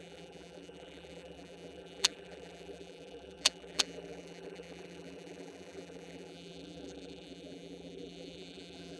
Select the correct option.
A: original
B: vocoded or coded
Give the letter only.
B